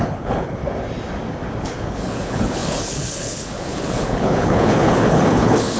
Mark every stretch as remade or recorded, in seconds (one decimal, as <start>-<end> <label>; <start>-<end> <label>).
0.0-0.6 remade; 0.6-1.6 recorded; 1.6-5.8 remade